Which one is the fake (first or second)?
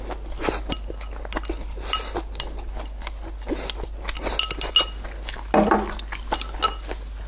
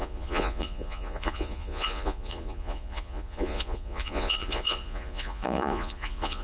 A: second